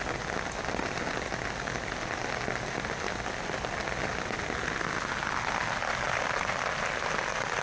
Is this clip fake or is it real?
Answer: real